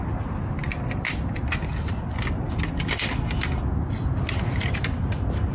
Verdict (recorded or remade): recorded